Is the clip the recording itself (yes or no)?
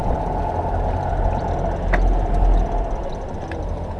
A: yes